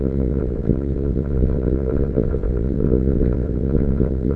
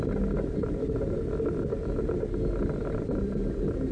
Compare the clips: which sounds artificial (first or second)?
first